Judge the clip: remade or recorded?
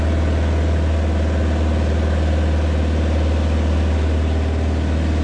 recorded